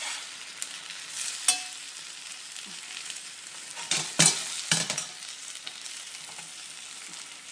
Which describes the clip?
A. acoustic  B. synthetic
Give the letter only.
A